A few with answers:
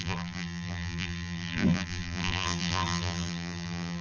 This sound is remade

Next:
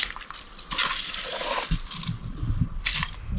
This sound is remade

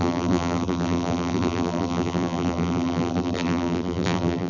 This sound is remade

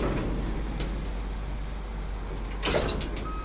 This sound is recorded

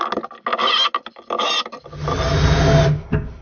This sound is recorded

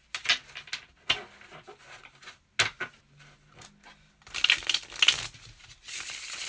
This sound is recorded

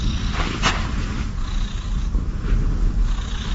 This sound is recorded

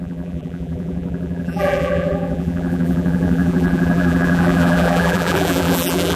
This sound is remade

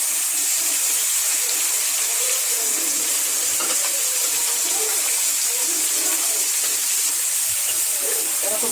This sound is remade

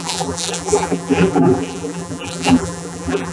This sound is remade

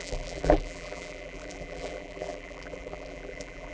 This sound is remade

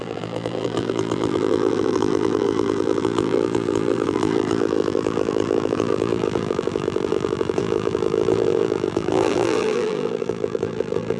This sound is remade